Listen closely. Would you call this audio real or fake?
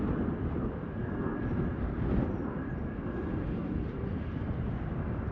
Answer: real